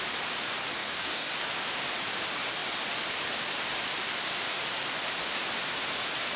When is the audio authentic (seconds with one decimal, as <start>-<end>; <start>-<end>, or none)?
0.0-0.8; 1.3-6.4